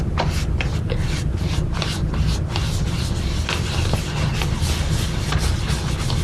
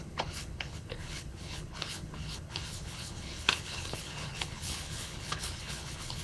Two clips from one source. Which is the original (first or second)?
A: first